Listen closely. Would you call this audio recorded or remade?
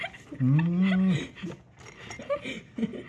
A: recorded